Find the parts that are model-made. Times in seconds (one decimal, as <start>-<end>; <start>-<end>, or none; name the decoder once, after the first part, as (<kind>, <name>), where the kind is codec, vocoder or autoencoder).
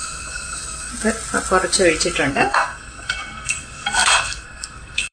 0.0-0.9 (codec, SNAC); 2.3-5.1